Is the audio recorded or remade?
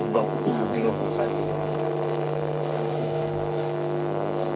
remade